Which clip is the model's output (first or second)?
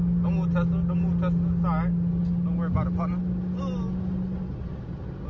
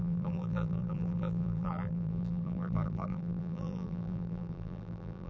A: second